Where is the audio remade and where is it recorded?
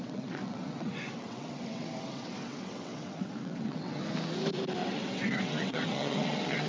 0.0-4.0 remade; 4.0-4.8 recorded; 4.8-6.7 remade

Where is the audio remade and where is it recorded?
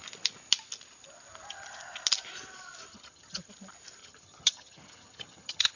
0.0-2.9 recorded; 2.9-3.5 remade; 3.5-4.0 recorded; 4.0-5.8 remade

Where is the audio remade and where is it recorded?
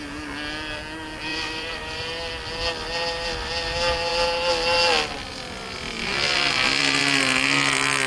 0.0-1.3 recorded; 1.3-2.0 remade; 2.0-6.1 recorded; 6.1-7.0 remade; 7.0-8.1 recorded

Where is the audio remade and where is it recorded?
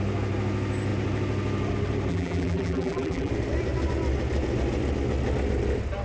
0.0-2.1 recorded; 2.1-3.3 remade; 3.3-6.0 recorded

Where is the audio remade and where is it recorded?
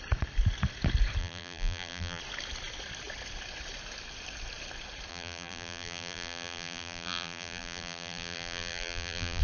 0.0-1.2 recorded; 1.2-2.2 remade; 2.2-5.1 recorded; 5.1-9.4 remade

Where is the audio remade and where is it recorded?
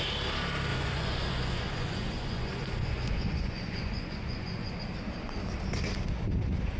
0.0-0.7 recorded; 0.7-4.8 remade; 4.8-6.8 recorded